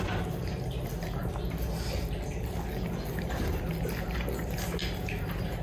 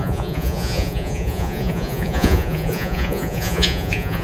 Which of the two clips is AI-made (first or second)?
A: second